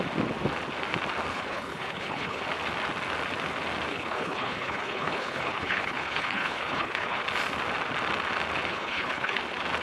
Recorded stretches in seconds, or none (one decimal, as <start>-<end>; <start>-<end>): 0.0-1.3; 2.4-3.9; 7.2-8.7; 9.4-9.8